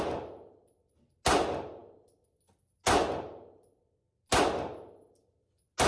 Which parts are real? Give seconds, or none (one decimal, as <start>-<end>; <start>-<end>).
0.0-5.9